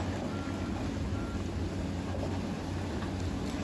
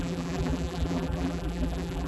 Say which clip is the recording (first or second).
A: first